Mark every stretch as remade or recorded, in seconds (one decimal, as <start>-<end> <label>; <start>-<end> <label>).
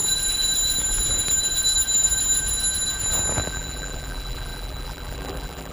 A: 0.0-3.4 recorded; 3.4-5.7 remade